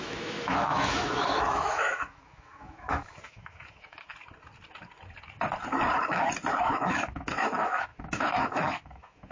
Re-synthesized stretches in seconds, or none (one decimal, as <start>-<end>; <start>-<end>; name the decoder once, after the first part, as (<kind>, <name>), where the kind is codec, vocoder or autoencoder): 0.0-4.1 (autoencoder, DAC-VAE); 6.6-9.3